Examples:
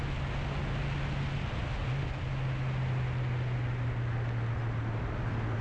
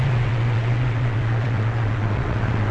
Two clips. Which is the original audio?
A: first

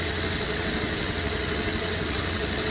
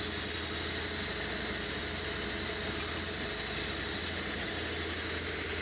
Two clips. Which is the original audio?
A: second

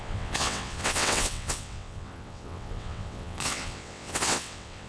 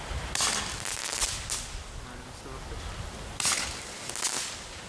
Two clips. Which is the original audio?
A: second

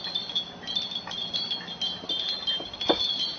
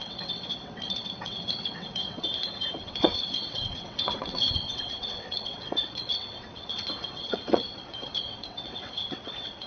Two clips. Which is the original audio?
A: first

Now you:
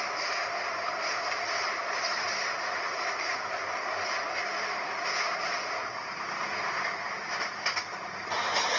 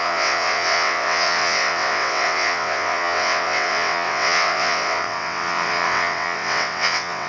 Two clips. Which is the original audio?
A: first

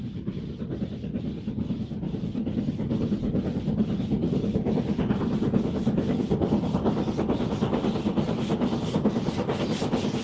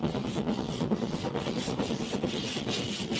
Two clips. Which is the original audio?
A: first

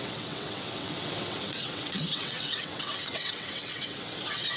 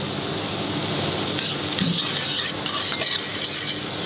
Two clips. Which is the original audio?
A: second